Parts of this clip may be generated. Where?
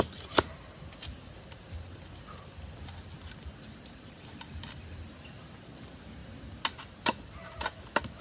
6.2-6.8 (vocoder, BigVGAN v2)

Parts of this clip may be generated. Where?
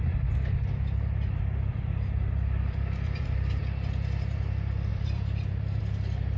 1.7-3.6 (vocoder, BigVGAN v2); 4.9-5.8